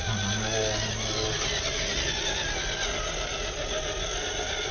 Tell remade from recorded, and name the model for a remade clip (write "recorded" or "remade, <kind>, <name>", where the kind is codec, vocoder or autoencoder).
recorded